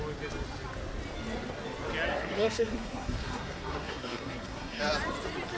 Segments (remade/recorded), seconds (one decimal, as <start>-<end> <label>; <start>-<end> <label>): 0.0-2.1 recorded; 2.1-4.8 remade; 4.8-5.6 recorded